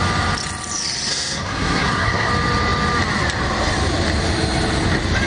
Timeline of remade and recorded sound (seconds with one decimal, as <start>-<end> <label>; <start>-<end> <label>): 0.0-1.1 recorded; 1.1-2.3 remade; 2.3-5.3 recorded